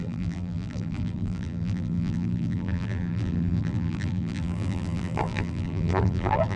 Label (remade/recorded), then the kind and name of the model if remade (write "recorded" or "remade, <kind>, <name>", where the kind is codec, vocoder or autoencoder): remade, vocoder, BigVGAN v2